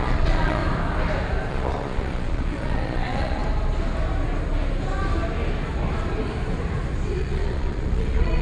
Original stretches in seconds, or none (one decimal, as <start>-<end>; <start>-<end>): 0.6-1.5; 3.4-7.2